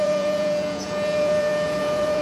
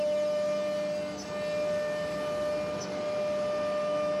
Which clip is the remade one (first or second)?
first